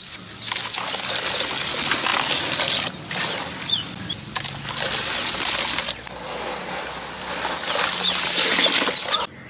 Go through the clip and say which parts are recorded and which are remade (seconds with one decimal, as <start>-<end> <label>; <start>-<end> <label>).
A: 0.0-9.5 recorded